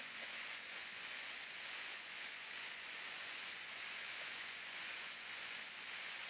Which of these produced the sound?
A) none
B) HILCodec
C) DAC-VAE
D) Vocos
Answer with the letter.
D